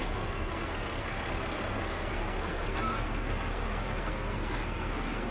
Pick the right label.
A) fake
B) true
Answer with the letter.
A